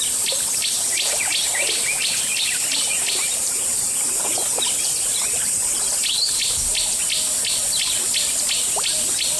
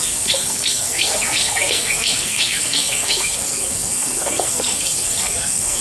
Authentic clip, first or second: first